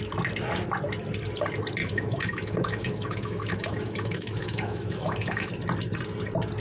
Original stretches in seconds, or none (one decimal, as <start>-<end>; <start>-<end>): 0.0-1.8; 5.5-6.6